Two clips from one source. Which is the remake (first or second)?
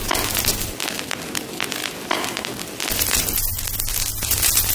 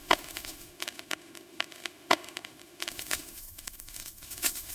second